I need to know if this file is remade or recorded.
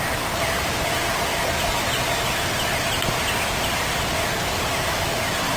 recorded